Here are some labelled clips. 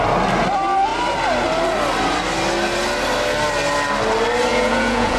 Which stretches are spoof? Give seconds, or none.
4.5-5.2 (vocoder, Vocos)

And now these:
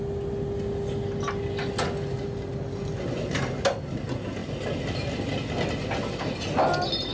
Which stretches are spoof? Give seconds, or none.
none